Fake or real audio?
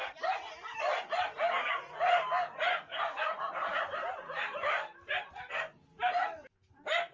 real